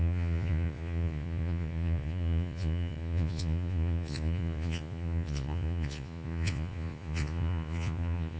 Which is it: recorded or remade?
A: remade